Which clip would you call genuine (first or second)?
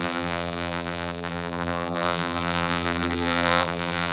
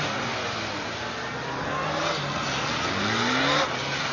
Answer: second